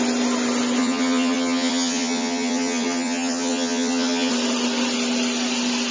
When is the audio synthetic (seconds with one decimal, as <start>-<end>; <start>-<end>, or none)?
0.8-4.3